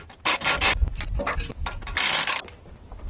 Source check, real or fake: real